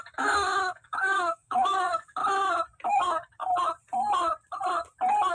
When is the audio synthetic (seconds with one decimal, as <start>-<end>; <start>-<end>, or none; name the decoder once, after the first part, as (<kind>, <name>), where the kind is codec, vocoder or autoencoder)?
0.0-2.2 (codec, DAC); 2.9-3.4